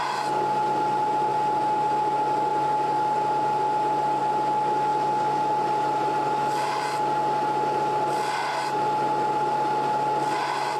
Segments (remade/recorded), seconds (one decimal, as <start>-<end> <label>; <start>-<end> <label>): 0.0-10.8 recorded